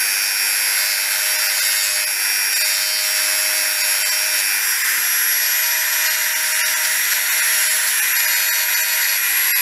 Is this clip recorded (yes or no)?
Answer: yes